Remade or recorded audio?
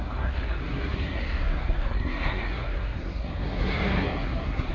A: remade